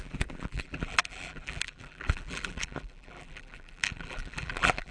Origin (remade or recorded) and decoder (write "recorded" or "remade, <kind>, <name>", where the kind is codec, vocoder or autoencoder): remade, vocoder, BigVGAN v2